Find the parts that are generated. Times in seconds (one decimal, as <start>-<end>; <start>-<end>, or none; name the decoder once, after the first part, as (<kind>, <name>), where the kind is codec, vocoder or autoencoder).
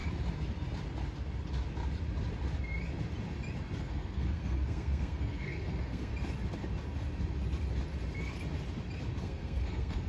3.8-6.1 (codec, SNAC); 9.2-10.1